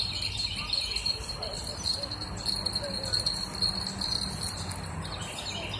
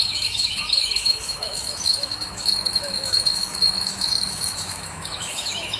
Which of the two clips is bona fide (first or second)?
first